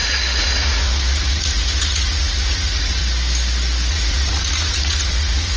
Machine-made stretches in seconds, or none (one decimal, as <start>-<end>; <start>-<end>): 0.0-3.0; 3.9-5.6